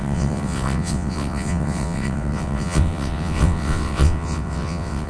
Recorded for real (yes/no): no